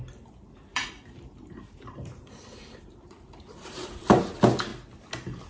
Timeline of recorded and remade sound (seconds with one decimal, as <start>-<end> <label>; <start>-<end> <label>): 0.0-0.7 recorded; 0.7-4.0 remade; 4.0-5.5 recorded

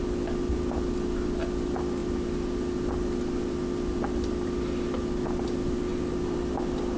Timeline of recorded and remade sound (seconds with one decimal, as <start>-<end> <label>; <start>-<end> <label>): 0.0-7.0 recorded

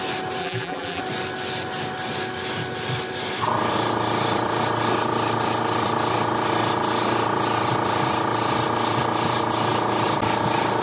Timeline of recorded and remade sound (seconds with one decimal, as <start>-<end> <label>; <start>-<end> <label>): 0.0-0.4 recorded; 0.4-1.0 remade; 1.0-10.8 recorded

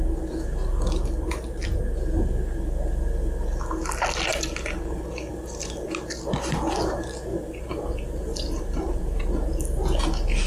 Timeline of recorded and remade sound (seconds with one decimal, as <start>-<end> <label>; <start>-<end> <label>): 0.0-7.3 recorded; 7.3-9.6 remade; 9.6-10.5 recorded

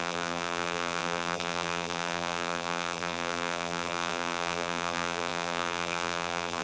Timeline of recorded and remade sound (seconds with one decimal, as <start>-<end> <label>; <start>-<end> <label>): 0.0-6.6 remade

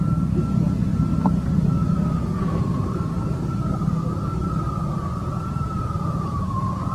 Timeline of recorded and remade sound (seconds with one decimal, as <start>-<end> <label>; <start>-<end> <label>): 0.0-6.9 recorded

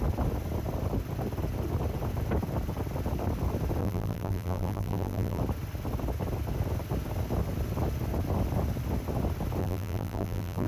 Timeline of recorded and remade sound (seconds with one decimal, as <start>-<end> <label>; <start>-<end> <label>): 0.0-3.8 recorded; 3.8-5.4 remade; 5.4-9.6 recorded; 9.6-10.7 remade

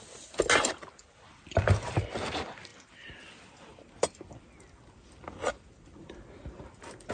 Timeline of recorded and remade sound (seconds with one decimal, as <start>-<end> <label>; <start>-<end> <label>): 0.0-2.7 recorded; 2.7-7.1 remade